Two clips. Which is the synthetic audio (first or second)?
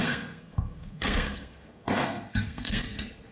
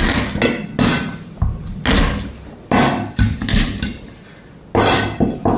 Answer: first